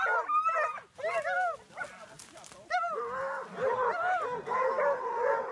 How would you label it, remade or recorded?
recorded